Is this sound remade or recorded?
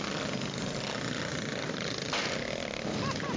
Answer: recorded